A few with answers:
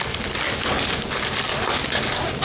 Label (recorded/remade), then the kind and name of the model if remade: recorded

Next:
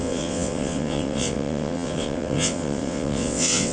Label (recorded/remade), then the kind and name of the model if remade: remade, vocoder, WaveNeXt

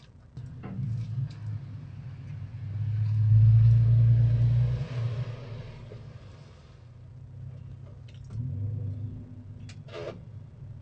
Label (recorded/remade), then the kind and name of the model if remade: recorded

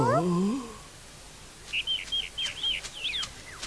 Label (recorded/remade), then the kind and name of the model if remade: recorded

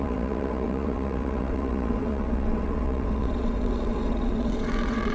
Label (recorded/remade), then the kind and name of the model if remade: remade, vocoder, WaveNeXt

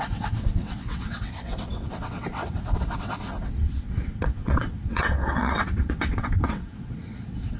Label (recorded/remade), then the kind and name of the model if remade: remade, vocoder, WaveNeXt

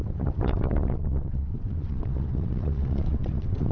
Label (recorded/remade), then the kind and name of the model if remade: remade, vocoder, WaveNeXt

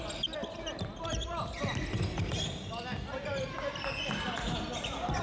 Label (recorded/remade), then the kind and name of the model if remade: recorded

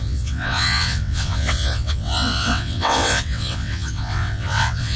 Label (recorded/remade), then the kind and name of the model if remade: remade, vocoder, WaveNeXt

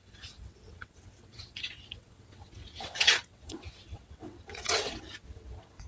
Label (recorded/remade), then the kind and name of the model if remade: remade, vocoder, WaveNeXt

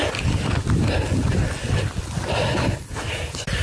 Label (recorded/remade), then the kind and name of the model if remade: recorded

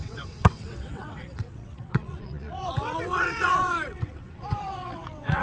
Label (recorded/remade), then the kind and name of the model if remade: remade, vocoder, WaveNeXt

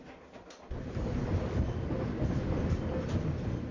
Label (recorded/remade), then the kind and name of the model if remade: recorded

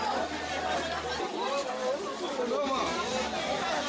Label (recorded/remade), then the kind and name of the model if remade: recorded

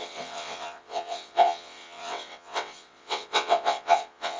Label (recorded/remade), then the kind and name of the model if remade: remade, vocoder, WaveNeXt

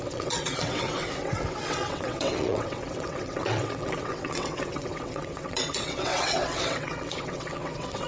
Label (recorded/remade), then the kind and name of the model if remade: remade, vocoder, WaveNeXt